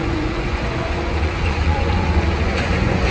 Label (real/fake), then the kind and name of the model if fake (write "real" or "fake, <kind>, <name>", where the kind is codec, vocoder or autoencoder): fake, vocoder, Vocos